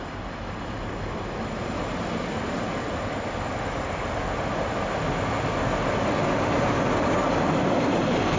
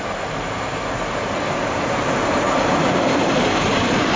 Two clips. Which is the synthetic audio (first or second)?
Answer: second